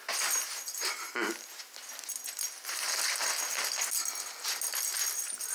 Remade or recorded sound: recorded